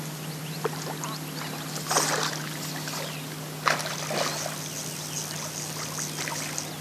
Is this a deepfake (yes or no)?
no